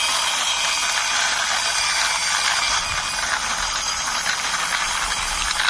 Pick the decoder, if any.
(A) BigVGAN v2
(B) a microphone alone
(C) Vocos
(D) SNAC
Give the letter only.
B